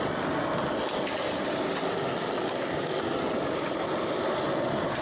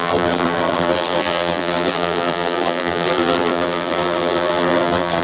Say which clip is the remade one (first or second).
second